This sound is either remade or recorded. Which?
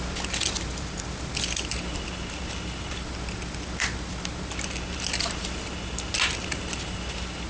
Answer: recorded